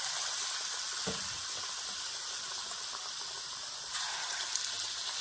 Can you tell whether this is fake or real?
real